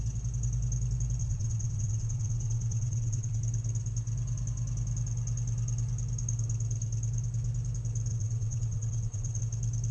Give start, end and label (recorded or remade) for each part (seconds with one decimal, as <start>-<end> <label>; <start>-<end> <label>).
0.0-1.2 recorded; 1.2-3.4 remade; 3.4-8.1 recorded; 8.1-9.4 remade; 9.4-9.9 recorded